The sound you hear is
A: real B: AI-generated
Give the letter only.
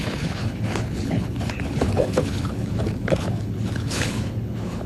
B